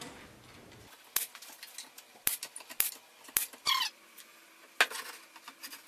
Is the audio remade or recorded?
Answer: recorded